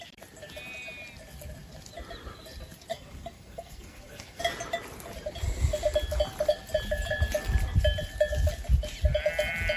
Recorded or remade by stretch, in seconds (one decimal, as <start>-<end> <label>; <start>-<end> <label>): 0.0-2.9 recorded; 2.9-4.4 remade; 4.4-9.8 recorded